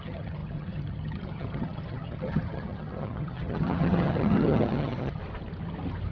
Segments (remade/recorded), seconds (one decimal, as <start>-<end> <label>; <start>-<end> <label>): 0.0-5.2 remade; 5.2-6.1 recorded